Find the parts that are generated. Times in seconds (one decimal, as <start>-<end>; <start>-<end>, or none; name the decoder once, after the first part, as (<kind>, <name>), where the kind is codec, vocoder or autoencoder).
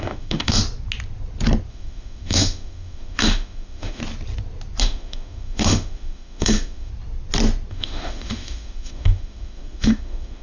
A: 0.0-0.6 (autoencoder, DAC-VAE); 1.7-4.0; 4.8-6.9; 7.7-10.4